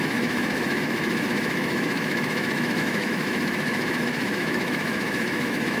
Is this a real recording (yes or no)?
no